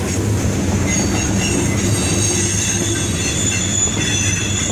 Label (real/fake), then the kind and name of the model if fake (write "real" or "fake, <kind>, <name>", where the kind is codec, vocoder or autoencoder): real